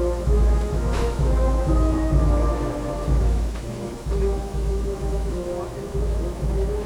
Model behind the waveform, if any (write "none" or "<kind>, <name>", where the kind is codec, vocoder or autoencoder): autoencoder, DAC-VAE